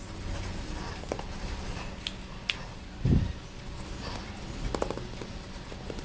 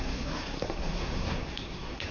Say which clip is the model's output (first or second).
second